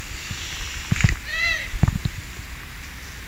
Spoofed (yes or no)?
no